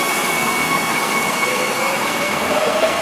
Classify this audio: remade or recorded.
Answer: remade